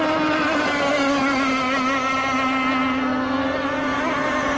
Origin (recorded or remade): recorded